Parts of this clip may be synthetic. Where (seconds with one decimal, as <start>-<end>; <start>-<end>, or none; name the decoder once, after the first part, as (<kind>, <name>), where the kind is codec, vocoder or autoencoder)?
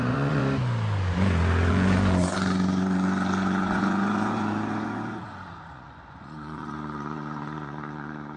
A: 0.0-0.4 (vocoder, Vocos); 1.7-8.4